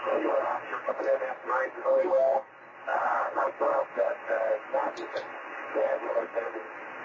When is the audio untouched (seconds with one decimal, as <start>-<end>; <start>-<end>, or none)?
0.0-2.0; 2.5-7.0